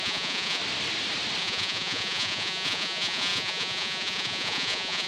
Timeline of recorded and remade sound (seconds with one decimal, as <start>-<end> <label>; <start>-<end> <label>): 0.0-0.6 remade; 0.6-1.4 recorded; 1.4-5.1 remade

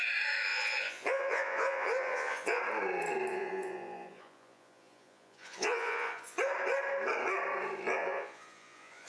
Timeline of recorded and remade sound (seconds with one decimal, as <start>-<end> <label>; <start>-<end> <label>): 0.0-0.5 recorded; 0.5-2.6 remade; 2.6-3.3 recorded; 3.3-6.4 remade; 6.4-8.0 recorded; 8.0-9.1 remade

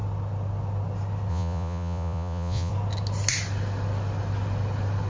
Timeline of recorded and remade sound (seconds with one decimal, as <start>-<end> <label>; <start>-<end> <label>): 0.0-1.3 recorded; 1.3-2.7 remade; 2.7-5.1 recorded